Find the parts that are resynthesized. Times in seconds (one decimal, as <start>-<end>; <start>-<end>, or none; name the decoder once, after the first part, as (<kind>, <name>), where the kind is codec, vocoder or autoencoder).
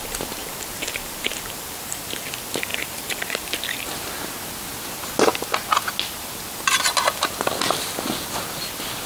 0.4-2.2 (vocoder, BigVGAN v2); 2.7-3.4